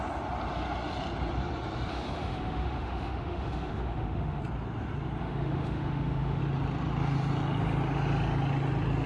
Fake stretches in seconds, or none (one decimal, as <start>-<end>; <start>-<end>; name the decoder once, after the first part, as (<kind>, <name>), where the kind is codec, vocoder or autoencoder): 1.9-4.4 (autoencoder, DAC-VAE); 5.2-6.4